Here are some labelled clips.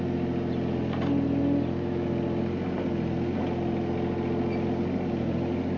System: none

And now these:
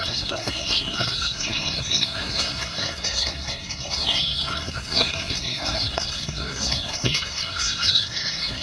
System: codec, SNAC